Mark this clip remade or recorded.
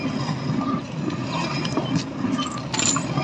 recorded